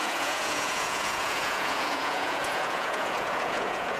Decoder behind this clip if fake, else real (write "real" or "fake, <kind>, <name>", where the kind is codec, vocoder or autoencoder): fake, vocoder, Vocos